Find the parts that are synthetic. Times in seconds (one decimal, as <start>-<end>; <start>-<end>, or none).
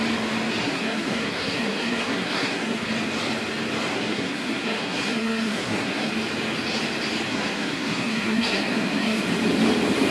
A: 0.6-2.9; 3.9-6.1; 7.3-9.2